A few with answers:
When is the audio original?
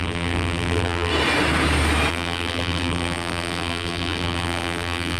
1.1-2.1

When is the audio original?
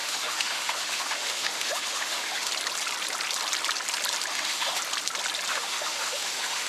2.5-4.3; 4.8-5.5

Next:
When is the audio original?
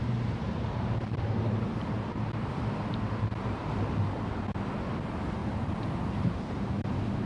3.8-5.4; 6.6-7.3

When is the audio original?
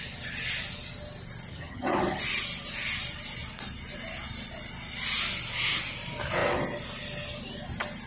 0.0-1.5; 2.2-8.1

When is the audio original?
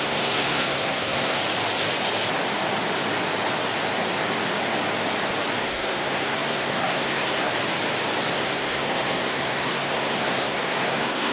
1.4-5.6; 7.5-8.3